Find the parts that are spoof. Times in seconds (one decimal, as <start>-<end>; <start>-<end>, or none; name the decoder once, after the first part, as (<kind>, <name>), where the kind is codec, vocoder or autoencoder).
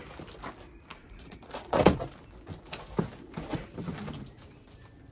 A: 0.9-2.1 (vocoder, Vocos)